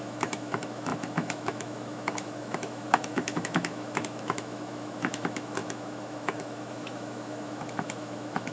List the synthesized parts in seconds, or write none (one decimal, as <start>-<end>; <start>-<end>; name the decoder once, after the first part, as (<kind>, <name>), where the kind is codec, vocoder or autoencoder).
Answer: 0.0-8.5 (autoencoder, DAC-VAE)